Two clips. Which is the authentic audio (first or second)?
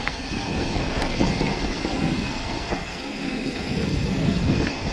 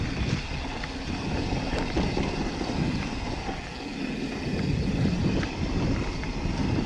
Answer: second